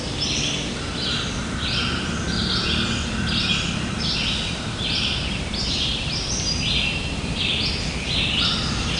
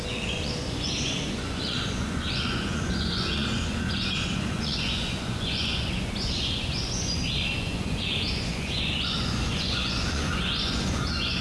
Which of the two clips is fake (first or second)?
second